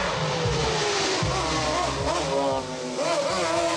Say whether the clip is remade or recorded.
recorded